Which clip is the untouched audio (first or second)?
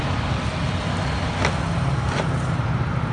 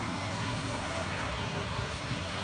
first